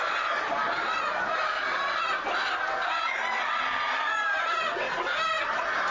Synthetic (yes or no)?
no